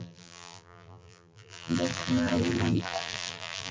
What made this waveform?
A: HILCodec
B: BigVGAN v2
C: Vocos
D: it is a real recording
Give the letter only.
B